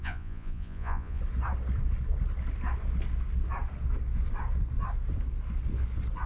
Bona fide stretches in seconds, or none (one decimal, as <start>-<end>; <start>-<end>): 1.2-6.3